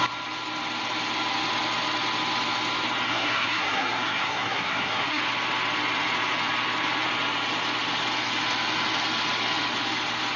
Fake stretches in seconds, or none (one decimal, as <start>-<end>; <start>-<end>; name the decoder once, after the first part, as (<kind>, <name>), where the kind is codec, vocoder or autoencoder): 3.1-5.2 (codec, SNAC)